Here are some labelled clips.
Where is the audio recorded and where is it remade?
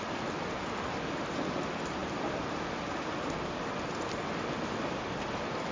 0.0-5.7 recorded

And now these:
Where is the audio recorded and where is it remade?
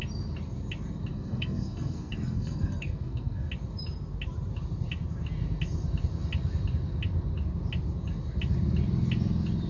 0.0-1.1 recorded; 1.1-3.5 remade; 3.5-9.7 recorded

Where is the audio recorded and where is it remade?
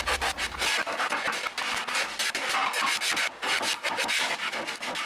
0.0-5.1 recorded